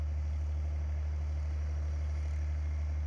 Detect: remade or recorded recorded